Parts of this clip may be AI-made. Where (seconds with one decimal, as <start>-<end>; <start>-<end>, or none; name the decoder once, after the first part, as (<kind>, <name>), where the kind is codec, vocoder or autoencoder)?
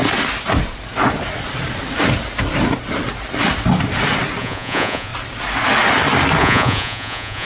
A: 4.4-5.1 (vocoder, Vocos); 6.4-7.4